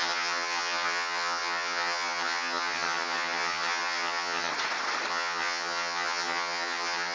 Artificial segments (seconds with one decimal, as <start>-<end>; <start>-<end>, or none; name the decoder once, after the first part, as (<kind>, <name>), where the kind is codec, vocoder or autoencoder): 0.0-4.5 (vocoder, HiFi-GAN); 5.1-7.1